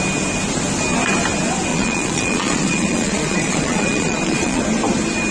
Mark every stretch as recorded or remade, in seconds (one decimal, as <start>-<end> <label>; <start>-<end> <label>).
0.0-1.7 recorded; 1.7-4.6 remade; 4.6-5.3 recorded